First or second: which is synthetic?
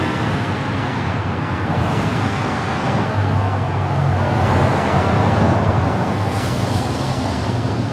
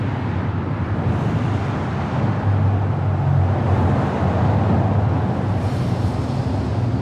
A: first